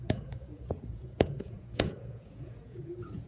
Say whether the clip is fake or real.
fake